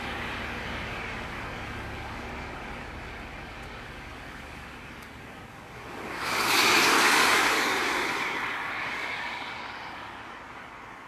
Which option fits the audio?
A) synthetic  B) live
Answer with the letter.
A